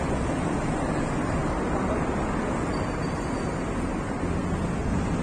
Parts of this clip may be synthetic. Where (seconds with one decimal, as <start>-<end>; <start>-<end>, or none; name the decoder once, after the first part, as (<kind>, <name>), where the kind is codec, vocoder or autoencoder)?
none